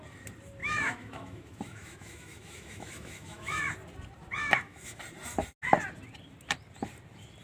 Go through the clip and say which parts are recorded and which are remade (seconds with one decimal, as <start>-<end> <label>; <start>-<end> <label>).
0.0-0.6 recorded; 0.6-3.6 remade; 3.6-4.4 recorded; 4.4-5.0 remade; 5.0-7.4 recorded